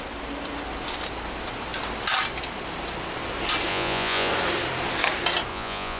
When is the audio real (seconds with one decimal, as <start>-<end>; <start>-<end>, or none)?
0.0-3.7; 4.3-5.5